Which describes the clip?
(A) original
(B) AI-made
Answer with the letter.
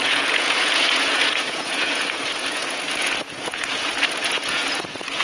B